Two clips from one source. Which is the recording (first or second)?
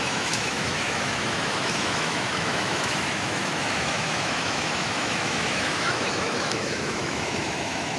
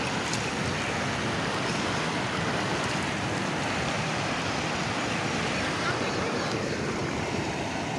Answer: second